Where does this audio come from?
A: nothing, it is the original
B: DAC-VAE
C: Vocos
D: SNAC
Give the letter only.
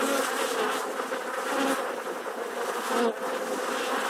A